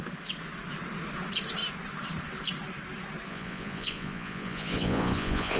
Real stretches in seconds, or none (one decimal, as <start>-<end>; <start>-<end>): 0.0-3.3